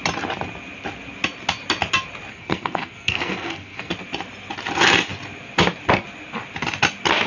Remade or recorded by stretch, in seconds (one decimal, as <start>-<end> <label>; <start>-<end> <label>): 0.0-2.3 recorded; 2.3-3.9 remade; 3.9-7.3 recorded

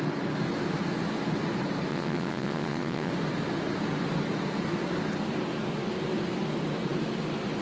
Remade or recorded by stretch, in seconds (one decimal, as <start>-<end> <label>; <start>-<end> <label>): 0.0-1.9 recorded; 1.9-3.1 remade; 3.1-7.6 recorded

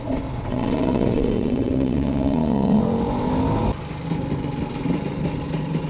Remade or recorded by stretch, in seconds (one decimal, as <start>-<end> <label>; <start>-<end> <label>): 0.0-0.5 recorded; 0.5-2.8 remade; 2.8-5.9 recorded

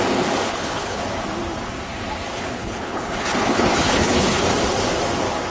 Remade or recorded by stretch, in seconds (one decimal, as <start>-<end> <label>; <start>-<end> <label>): 0.0-0.5 recorded; 0.5-1.0 remade; 1.0-2.3 recorded; 2.3-4.4 remade; 4.4-5.5 recorded

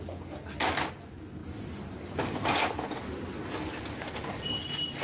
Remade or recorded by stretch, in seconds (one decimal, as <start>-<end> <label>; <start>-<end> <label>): 0.0-5.0 recorded

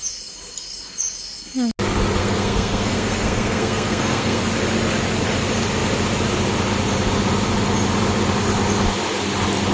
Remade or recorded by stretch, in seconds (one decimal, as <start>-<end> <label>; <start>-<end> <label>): 0.0-2.2 recorded; 2.2-4.4 remade; 4.4-9.7 recorded

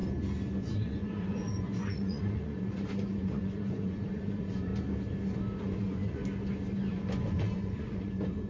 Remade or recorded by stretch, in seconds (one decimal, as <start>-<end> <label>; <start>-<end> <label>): 0.0-0.6 recorded; 0.6-4.7 remade; 4.7-5.6 recorded; 5.6-6.2 remade; 6.2-6.9 recorded; 6.9-8.5 remade